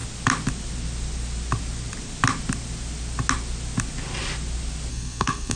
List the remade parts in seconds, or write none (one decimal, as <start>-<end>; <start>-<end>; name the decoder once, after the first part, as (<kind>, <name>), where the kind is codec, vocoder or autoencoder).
4.9-5.6 (codec, SNAC)